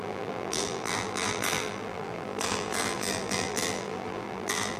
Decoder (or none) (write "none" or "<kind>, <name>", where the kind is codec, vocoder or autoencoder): vocoder, BigVGAN v2